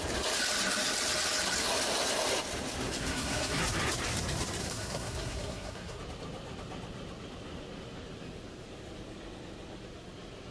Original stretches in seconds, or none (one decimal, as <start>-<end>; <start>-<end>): 0.0-3.0; 3.6-4.6; 6.0-10.5